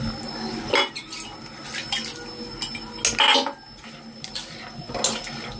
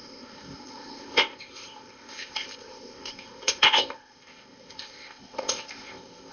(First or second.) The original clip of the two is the first